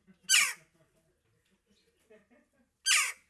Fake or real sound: real